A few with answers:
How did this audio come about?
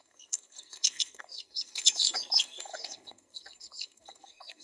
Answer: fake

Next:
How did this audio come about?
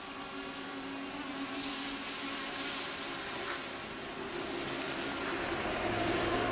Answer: real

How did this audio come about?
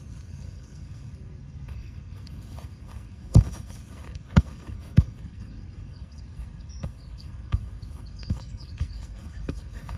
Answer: fake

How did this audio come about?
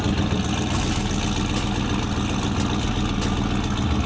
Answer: real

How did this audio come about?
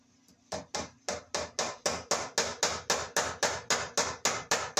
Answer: real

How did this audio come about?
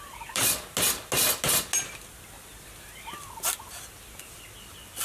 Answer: real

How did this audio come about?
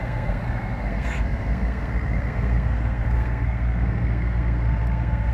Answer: fake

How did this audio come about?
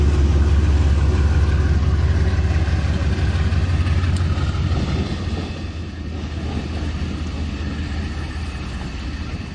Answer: real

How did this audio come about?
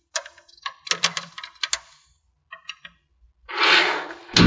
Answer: real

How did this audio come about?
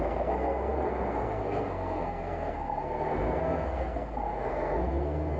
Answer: fake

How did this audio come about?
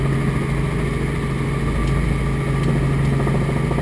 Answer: real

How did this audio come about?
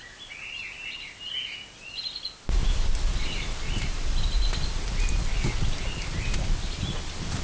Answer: real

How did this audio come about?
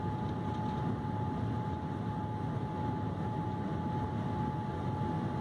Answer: real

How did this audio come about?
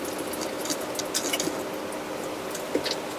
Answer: real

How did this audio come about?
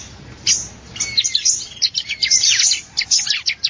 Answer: real